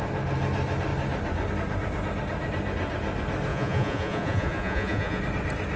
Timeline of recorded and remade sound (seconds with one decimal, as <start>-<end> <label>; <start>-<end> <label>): 0.0-3.5 recorded; 3.5-5.2 remade; 5.2-5.8 recorded